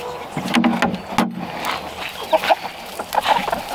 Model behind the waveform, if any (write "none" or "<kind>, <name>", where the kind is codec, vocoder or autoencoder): none